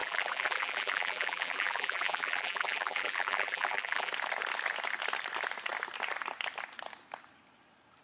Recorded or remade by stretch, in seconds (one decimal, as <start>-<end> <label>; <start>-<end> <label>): 0.0-4.1 remade; 4.1-8.0 recorded